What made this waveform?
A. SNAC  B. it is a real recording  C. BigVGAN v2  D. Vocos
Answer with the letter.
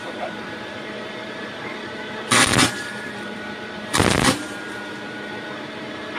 C